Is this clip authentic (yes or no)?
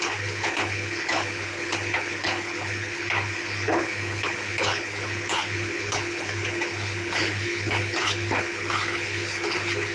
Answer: no